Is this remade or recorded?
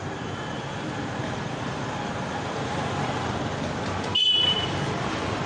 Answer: remade